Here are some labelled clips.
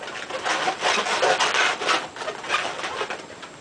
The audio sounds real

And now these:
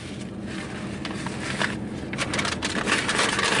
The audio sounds real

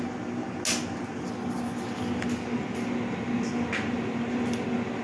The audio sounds real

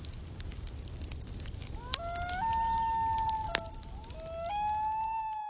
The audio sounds real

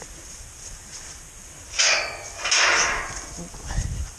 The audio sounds real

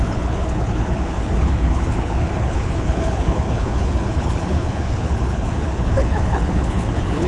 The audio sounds fake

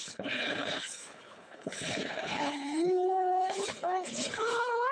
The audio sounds fake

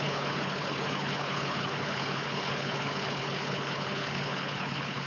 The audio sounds fake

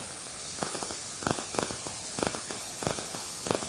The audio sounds fake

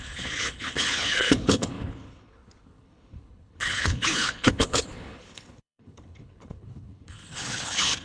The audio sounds fake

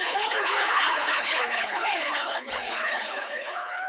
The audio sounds fake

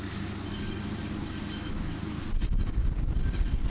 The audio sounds real